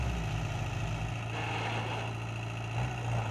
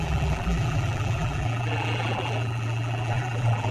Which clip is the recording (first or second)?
first